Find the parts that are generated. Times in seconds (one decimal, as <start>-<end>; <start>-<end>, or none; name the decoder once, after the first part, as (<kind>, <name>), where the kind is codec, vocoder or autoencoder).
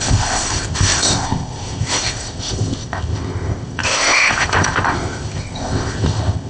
0.0-6.5 (codec, ZipCodec)